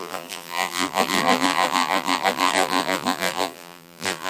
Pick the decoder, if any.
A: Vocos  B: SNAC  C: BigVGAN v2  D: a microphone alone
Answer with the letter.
C